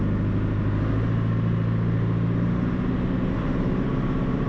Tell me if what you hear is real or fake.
real